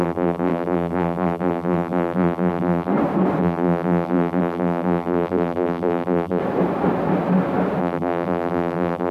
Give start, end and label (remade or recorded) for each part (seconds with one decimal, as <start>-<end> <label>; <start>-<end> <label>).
0.0-2.9 remade; 2.9-3.4 recorded; 3.4-6.4 remade; 6.4-7.8 recorded; 7.8-9.1 remade